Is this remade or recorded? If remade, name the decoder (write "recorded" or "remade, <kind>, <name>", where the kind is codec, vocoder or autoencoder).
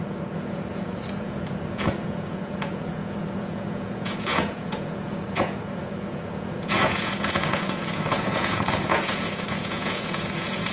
remade, vocoder, Vocos